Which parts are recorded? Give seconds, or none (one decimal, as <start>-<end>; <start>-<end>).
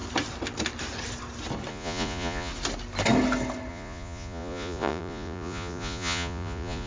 0.0-1.7; 2.5-3.7